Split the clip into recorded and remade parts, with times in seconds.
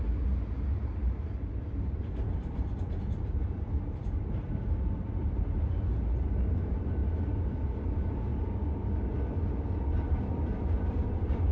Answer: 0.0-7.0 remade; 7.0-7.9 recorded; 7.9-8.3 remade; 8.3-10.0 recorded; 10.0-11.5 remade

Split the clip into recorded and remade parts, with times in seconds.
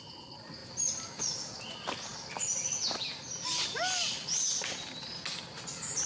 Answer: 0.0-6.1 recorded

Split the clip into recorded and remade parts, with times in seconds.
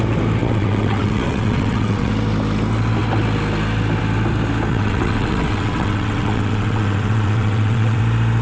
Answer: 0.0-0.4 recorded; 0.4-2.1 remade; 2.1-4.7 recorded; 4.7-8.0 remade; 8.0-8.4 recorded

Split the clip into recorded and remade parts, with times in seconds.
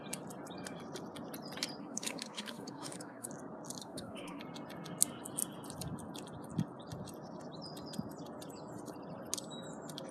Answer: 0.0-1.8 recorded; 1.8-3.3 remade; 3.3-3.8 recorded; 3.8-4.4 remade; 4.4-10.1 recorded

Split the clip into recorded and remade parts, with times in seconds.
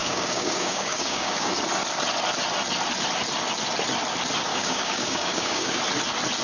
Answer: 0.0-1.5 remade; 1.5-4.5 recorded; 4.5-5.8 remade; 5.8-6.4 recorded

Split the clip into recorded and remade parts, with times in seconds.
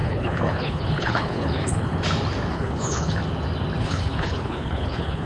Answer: 0.0-1.9 remade; 1.9-2.5 recorded; 2.5-3.2 remade; 3.2-3.8 recorded; 3.8-5.3 remade